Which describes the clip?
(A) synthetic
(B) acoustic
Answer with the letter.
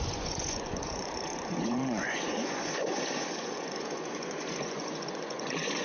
A